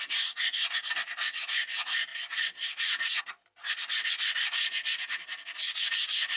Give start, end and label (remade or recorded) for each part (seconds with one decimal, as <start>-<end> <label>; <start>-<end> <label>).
0.0-6.4 recorded